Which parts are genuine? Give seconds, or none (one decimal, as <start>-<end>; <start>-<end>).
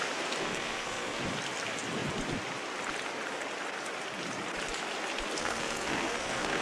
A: 0.0-0.4; 1.2-5.4